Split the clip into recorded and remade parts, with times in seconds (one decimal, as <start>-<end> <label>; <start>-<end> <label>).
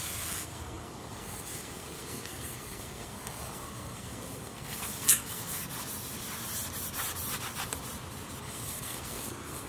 0.0-5.6 remade; 5.6-8.4 recorded; 8.4-9.7 remade